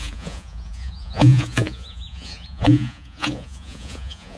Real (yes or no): no